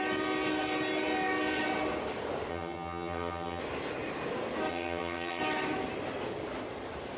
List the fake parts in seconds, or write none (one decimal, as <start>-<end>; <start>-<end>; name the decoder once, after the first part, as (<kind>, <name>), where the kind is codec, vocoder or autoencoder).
2.5-3.6 (vocoder, HiFi-GAN); 4.7-5.4